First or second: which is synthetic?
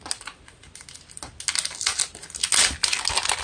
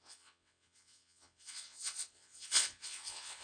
second